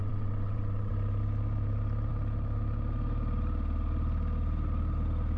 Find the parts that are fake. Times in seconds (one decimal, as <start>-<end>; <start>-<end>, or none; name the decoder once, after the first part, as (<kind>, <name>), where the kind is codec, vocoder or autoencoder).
0.0-0.9 (vocoder, WaveNeXt)